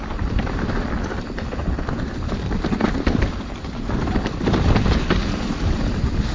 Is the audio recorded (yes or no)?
no